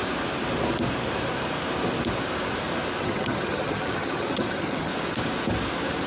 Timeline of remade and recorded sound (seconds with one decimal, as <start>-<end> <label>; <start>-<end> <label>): 0.0-3.0 recorded; 3.0-4.9 remade; 4.9-6.1 recorded